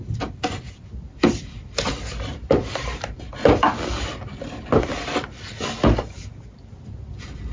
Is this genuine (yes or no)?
no